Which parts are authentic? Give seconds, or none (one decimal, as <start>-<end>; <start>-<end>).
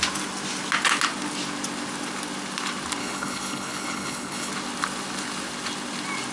0.0-3.0; 4.5-6.3